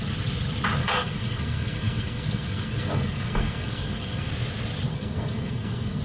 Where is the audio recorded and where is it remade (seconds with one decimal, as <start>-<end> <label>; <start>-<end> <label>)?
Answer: 0.0-0.8 recorded; 0.8-4.3 remade; 4.3-4.9 recorded; 4.9-6.0 remade